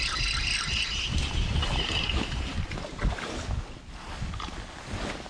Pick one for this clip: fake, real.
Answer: real